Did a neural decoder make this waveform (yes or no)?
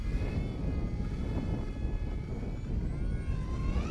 no